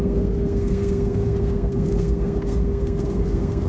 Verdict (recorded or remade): remade